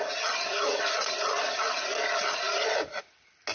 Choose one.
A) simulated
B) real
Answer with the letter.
B